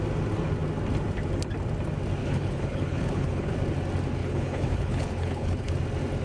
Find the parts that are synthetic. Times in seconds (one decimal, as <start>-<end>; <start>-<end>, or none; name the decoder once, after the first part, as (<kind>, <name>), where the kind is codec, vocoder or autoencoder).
2.2-3.5 (codec, HILCodec); 4.2-5.7